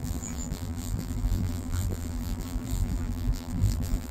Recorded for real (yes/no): no